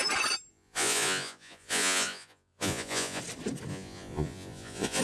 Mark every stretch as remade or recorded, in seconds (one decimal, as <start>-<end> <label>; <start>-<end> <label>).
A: 0.0-0.5 recorded; 0.5-3.2 remade; 3.2-3.7 recorded; 3.7-5.0 remade